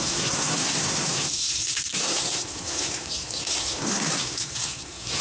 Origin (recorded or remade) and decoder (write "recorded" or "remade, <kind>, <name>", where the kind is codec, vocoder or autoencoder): remade, codec, SNAC